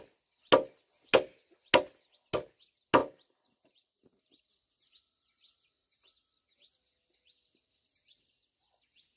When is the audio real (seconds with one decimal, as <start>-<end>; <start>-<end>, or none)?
0.0-3.0; 4.5-9.2